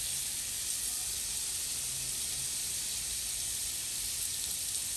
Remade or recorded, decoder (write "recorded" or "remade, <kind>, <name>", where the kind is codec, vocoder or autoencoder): recorded